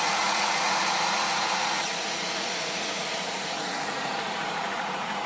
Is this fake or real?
fake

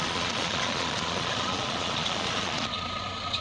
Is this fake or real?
fake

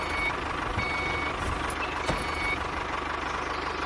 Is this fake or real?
real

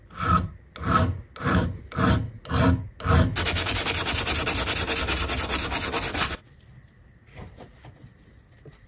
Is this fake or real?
real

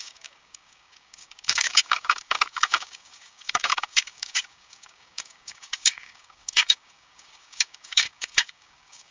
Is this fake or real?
fake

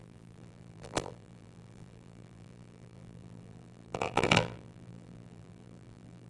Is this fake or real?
fake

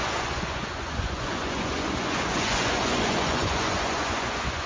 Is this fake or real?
fake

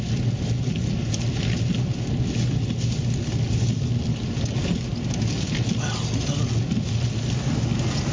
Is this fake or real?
real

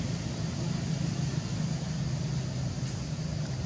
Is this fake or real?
real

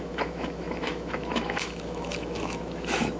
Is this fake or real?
fake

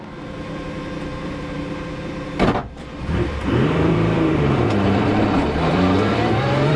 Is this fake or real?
fake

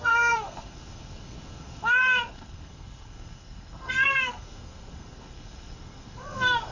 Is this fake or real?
fake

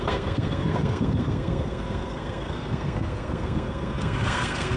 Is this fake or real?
fake